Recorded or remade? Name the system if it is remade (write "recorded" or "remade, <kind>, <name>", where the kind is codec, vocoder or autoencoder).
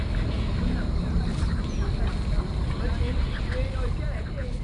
recorded